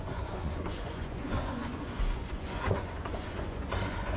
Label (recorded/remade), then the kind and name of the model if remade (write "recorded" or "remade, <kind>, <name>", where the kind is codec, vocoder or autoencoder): remade, vocoder, Vocos